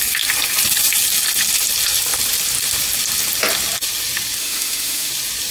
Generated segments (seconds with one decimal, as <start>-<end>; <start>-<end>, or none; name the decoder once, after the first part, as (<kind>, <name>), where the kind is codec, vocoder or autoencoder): 4.4-5.1 (autoencoder, DAC-VAE)